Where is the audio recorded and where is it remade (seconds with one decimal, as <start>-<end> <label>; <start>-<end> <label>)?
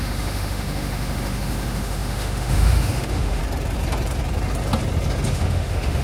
0.0-3.4 remade; 3.4-5.3 recorded; 5.3-6.0 remade